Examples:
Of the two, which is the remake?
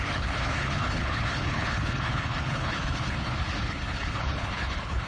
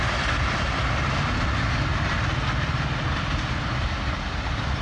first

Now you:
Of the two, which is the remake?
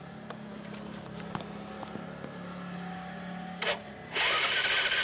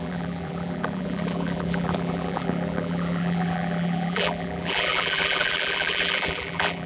second